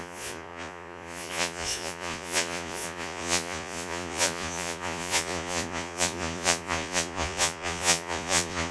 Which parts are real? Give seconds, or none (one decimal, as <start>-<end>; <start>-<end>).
none